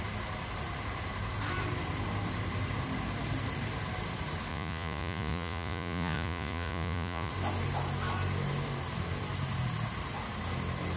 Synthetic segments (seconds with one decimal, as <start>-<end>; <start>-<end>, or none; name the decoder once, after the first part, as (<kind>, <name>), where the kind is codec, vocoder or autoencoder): 4.5-7.3 (vocoder, Vocos)